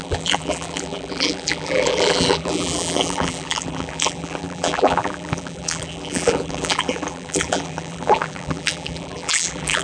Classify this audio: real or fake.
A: fake